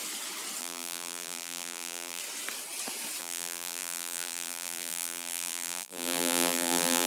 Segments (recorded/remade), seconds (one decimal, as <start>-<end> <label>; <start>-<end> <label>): 0.0-0.6 recorded; 0.6-2.2 remade; 2.2-3.2 recorded; 3.2-7.1 remade